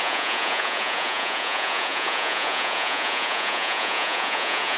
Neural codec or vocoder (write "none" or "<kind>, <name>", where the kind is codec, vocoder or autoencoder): vocoder, Vocos